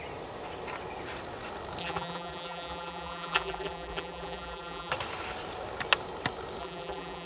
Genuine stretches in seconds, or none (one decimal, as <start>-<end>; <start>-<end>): 0.0-1.8; 4.9-6.6